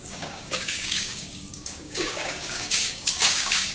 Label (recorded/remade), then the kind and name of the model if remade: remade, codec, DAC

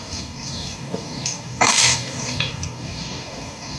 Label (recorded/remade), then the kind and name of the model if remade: remade, codec, DAC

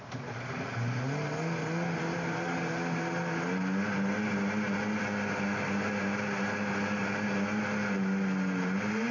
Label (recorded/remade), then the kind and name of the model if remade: recorded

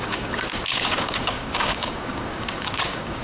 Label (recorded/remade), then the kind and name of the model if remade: remade, codec, DAC